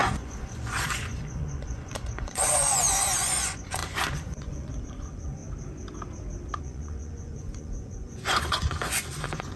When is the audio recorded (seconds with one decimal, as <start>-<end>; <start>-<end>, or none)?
5.4-6.6